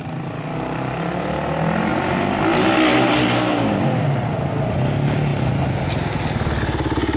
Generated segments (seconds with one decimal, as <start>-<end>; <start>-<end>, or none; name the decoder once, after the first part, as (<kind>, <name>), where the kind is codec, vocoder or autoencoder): none